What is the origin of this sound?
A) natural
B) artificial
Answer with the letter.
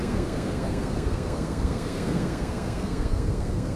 B